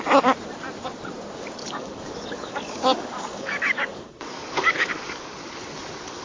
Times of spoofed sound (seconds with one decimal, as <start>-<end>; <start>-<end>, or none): 1.6-5.3